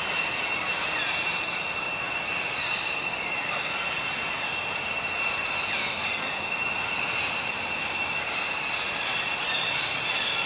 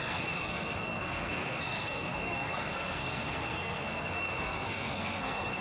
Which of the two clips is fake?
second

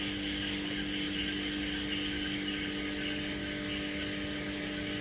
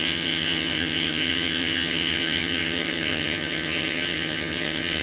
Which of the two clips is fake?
second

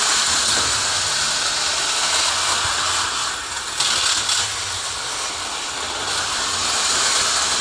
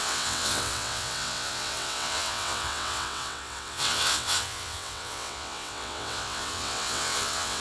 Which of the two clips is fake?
second